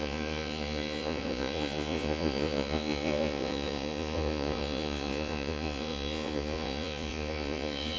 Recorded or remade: remade